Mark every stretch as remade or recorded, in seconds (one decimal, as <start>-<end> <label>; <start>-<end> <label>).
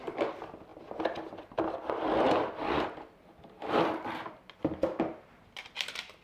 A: 0.0-6.2 recorded